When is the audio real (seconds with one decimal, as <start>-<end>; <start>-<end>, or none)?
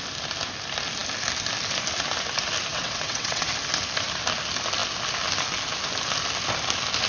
0.0-2.7; 3.5-7.1